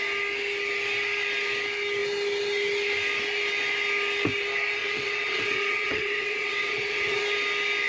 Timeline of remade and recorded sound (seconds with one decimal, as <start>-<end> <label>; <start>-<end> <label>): 0.0-4.8 recorded; 4.8-7.2 remade; 7.2-7.9 recorded